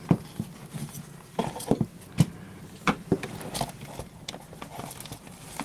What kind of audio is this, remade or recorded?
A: recorded